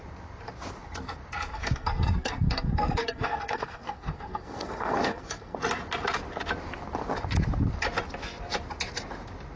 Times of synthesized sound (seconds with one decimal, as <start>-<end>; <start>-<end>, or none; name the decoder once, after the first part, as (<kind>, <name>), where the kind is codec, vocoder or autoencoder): 1.5-5.6 (codec, SNAC)